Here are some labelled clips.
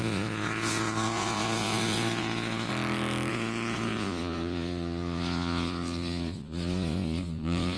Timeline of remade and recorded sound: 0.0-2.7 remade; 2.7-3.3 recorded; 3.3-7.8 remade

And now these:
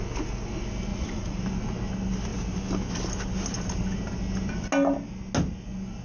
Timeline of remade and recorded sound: 0.0-0.9 recorded; 0.9-1.4 remade; 1.4-6.0 recorded

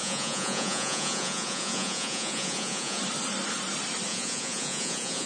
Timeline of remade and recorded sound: 0.0-3.0 remade; 3.0-4.1 recorded; 4.1-5.3 remade

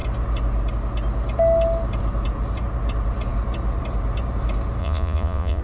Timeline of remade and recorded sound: 0.0-4.8 recorded; 4.8-5.6 remade

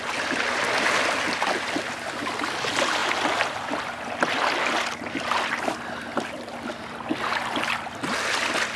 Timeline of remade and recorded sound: 0.0-8.8 recorded